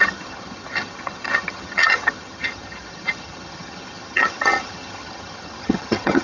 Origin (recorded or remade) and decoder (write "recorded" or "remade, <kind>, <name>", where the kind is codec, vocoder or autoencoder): remade, vocoder, HiFi-GAN